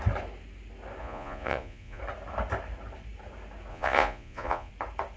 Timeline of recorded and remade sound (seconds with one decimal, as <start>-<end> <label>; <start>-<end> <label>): 0.0-1.0 recorded; 1.0-2.0 remade; 2.0-3.7 recorded; 3.7-4.7 remade; 4.7-5.2 recorded